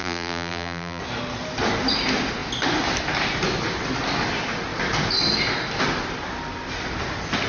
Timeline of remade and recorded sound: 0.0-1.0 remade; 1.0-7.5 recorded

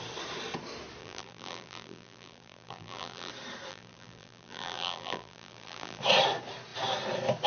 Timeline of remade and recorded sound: 0.0-1.0 recorded; 1.0-3.3 remade; 3.3-3.7 recorded; 3.7-6.0 remade; 6.0-7.5 recorded

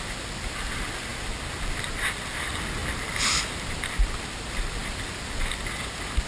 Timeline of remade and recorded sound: 0.0-6.3 recorded

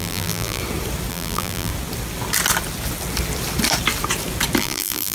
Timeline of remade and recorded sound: 0.0-0.6 remade; 0.6-1.1 recorded; 1.1-1.7 remade; 1.7-4.6 recorded; 4.6-5.1 remade

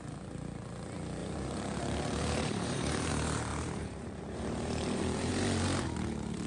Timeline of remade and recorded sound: 0.0-1.2 recorded; 1.2-3.1 remade; 3.1-3.5 recorded; 3.5-5.3 remade; 5.3-6.5 recorded